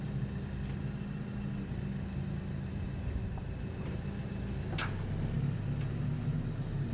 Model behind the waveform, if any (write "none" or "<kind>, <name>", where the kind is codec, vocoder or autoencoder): none